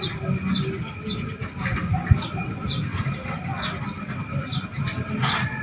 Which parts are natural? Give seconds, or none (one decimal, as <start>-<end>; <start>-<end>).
0.0-5.6